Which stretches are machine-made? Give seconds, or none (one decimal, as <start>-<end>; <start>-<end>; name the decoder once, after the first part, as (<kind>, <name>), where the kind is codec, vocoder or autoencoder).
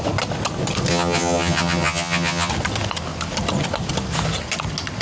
0.9-2.5 (vocoder, HiFi-GAN)